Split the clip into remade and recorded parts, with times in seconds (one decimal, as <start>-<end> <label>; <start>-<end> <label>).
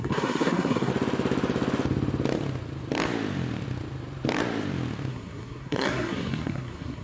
0.0-0.9 remade; 0.9-5.1 recorded; 5.1-7.0 remade